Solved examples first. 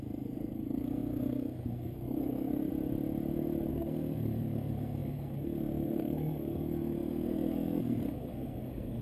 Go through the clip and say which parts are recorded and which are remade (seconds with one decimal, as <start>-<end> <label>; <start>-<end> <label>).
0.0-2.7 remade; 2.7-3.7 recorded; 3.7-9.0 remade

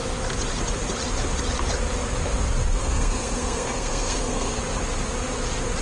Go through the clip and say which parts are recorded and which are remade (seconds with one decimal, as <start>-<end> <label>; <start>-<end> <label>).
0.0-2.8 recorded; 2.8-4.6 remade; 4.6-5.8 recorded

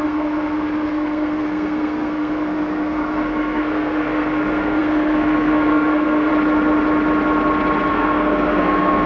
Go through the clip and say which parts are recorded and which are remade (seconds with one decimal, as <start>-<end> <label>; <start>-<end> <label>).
0.0-6.3 remade; 6.3-7.9 recorded; 7.9-9.1 remade

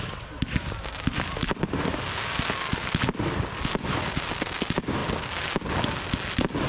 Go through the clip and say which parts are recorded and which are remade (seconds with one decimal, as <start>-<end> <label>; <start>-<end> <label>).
0.0-6.7 recorded

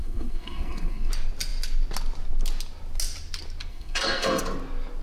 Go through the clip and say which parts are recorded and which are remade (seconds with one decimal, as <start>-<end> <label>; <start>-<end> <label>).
0.0-1.1 remade; 1.1-3.7 recorded; 3.7-4.4 remade; 4.4-5.0 recorded